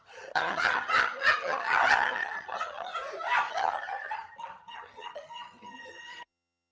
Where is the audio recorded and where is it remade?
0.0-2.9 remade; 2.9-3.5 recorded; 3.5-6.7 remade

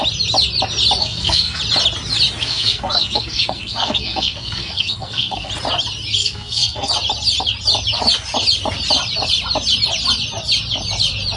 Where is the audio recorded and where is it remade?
0.0-1.0 recorded; 1.0-1.6 remade; 1.6-2.4 recorded; 2.4-5.5 remade; 5.5-6.2 recorded; 6.2-6.9 remade; 6.9-11.4 recorded

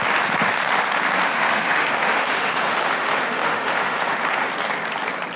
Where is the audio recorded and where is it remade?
0.0-1.3 recorded; 1.3-4.5 remade; 4.5-5.4 recorded

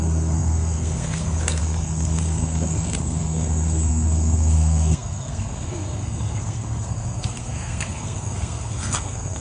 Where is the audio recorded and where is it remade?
0.0-9.4 remade